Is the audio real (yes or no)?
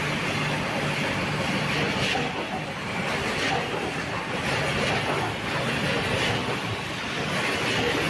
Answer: yes